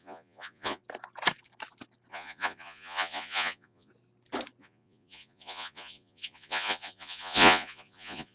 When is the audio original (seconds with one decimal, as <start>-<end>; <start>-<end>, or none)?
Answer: 0.8-2.1; 3.9-4.6